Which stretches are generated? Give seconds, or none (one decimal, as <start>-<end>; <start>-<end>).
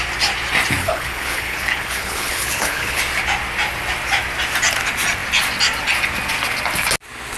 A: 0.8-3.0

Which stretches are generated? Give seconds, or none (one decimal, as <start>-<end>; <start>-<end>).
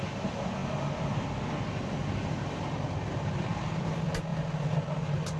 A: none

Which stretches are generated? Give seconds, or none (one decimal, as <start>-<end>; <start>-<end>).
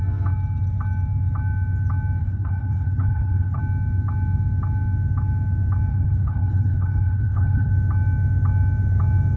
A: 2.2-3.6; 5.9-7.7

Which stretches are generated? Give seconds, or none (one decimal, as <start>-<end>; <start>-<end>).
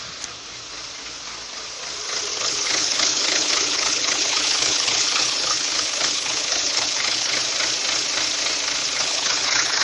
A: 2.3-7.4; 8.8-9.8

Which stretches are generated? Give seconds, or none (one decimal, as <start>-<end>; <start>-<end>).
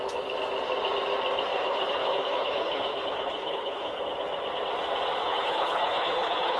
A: 1.5-4.0; 5.2-6.6